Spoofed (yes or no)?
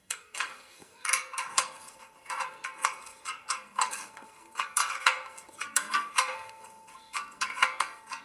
yes